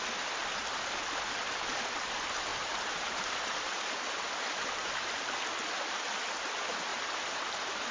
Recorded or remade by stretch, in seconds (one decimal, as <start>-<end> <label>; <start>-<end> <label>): 0.0-2.5 recorded; 2.5-5.2 remade; 5.2-6.9 recorded; 6.9-7.4 remade; 7.4-7.9 recorded